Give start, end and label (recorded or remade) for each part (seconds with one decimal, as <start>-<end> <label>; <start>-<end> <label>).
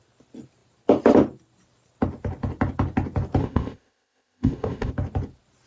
0.0-3.4 recorded; 3.4-4.9 remade; 4.9-5.7 recorded